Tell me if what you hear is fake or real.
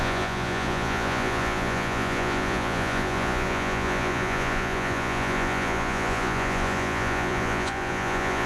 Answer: fake